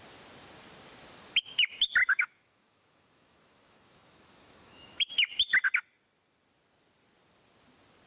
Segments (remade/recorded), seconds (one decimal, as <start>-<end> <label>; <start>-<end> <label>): 0.0-2.0 recorded; 2.0-5.1 remade; 5.1-8.1 recorded